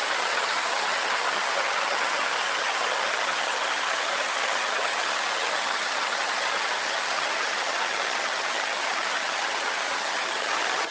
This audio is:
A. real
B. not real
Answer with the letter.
B